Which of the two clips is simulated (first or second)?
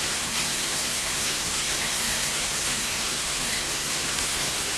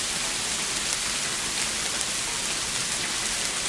first